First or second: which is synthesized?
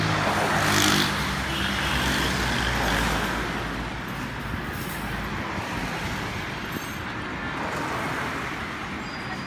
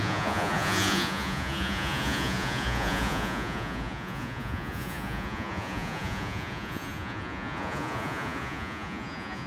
second